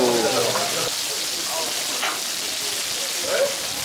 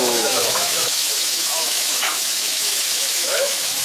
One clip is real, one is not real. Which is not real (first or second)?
second